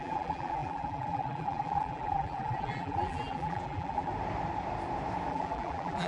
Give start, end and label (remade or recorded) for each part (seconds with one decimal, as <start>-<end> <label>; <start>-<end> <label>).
0.0-4.1 remade; 4.1-5.3 recorded; 5.3-6.1 remade

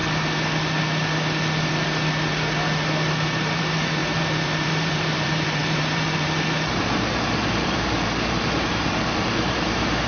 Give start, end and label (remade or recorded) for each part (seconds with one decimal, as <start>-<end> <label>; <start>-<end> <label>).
0.0-3.1 recorded; 3.1-10.1 remade

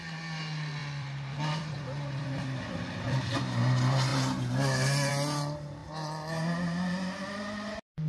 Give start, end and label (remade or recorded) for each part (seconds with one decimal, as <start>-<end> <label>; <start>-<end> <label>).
0.0-0.8 recorded; 0.8-3.3 remade; 3.3-8.1 recorded

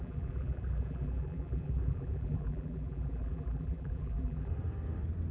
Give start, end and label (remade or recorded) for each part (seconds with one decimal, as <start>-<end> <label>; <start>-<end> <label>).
0.0-4.5 remade; 4.5-5.3 recorded

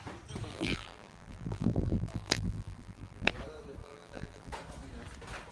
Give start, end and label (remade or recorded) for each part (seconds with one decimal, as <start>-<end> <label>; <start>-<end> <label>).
0.0-0.5 recorded; 0.5-3.3 remade; 3.3-3.8 recorded; 3.8-4.5 remade; 4.5-5.5 recorded

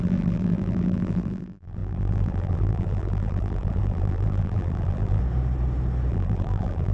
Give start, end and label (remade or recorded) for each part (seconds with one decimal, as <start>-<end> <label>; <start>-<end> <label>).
0.0-5.2 remade; 5.2-6.1 recorded; 6.1-6.9 remade

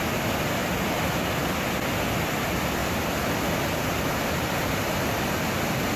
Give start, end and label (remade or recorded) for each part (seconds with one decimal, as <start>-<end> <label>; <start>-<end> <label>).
0.0-2.8 recorded; 2.8-5.0 remade; 5.0-6.0 recorded

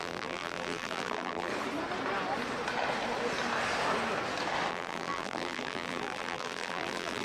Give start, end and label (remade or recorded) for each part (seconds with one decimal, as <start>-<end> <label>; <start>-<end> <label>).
0.0-1.5 remade; 1.5-4.7 recorded; 4.7-7.2 remade